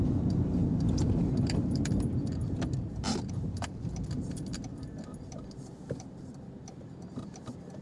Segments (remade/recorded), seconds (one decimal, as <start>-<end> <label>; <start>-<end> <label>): 0.0-7.8 remade